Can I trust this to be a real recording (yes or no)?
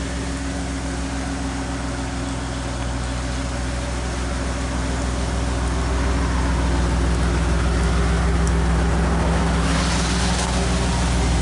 yes